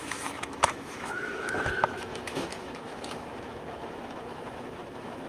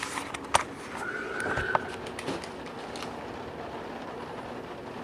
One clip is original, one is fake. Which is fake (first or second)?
first